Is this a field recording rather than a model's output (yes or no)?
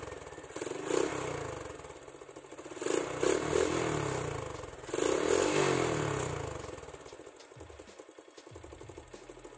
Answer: yes